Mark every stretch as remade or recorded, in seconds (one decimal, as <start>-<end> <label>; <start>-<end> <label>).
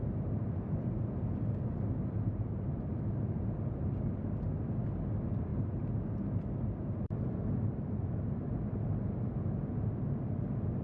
0.0-10.8 recorded